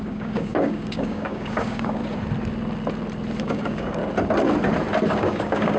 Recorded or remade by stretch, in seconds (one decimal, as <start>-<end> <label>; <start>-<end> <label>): 0.0-2.0 remade; 2.0-3.4 recorded; 3.4-4.0 remade; 4.0-5.1 recorded; 5.1-5.8 remade

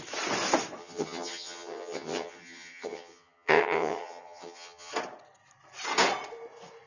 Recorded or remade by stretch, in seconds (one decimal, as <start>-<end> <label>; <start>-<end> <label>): 0.0-0.8 recorded; 0.8-4.9 remade; 4.9-6.9 recorded